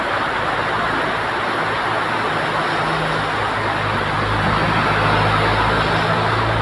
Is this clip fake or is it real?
real